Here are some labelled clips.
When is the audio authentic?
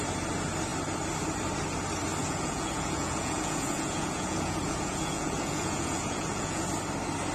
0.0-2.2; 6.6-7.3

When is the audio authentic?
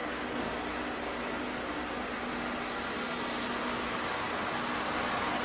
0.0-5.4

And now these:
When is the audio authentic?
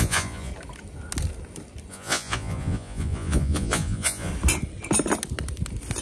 0.5-1.9; 4.3-6.0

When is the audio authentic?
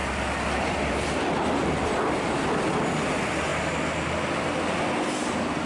2.4-5.7